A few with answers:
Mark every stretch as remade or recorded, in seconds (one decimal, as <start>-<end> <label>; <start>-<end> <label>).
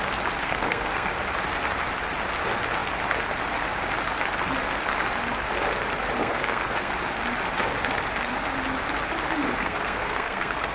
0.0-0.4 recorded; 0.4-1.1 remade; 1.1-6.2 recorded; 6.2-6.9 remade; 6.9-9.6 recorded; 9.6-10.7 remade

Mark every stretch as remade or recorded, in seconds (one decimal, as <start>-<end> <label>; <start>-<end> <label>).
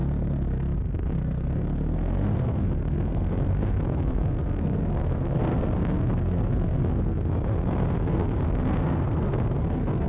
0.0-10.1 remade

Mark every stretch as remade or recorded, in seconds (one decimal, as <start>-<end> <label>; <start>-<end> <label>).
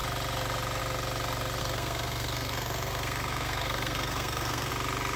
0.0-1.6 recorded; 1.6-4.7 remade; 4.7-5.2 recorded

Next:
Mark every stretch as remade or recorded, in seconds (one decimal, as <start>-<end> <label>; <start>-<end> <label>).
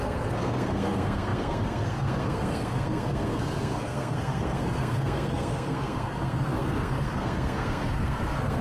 0.0-8.6 remade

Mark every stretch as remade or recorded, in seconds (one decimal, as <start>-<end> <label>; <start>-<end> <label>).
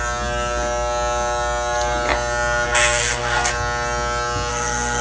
0.0-3.0 recorded; 3.0-3.5 remade; 3.5-4.5 recorded; 4.5-5.0 remade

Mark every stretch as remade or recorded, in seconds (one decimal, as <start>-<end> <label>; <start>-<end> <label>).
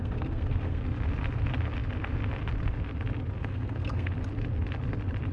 0.0-0.8 remade; 0.8-3.4 recorded; 3.4-4.1 remade; 4.1-5.3 recorded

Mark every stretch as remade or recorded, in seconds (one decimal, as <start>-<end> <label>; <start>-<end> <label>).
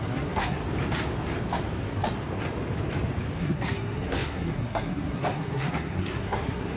0.0-0.6 remade; 0.6-3.4 recorded; 3.4-6.8 remade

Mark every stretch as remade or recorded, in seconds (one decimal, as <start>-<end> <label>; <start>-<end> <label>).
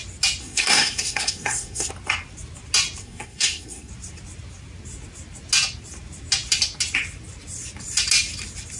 0.0-0.4 recorded; 0.4-1.9 remade; 1.9-3.0 recorded; 3.0-3.9 remade; 3.9-8.8 recorded